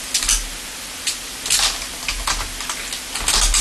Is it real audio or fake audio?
real